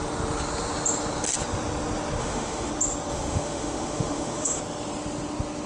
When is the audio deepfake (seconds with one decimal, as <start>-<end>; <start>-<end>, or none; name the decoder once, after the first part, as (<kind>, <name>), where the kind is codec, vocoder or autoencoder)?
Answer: 2.2-2.7 (autoencoder, DAC-VAE); 3.1-4.6